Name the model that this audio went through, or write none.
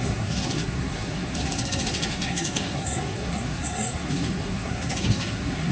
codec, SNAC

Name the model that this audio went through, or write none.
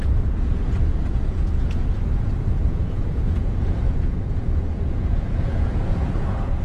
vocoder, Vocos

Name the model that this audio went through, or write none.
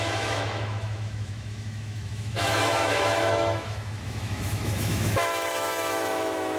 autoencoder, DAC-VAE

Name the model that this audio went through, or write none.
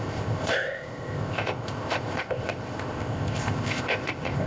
codec, ZipCodec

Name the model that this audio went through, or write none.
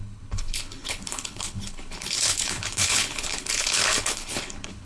codec, HILCodec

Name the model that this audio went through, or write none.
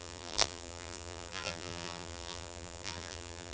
vocoder, BigVGAN v2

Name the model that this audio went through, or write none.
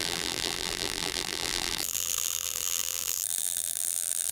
vocoder, BigVGAN v2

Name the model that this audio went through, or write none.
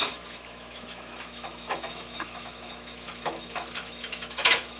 autoencoder, DAC-VAE